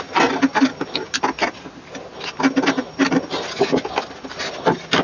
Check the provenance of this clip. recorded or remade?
recorded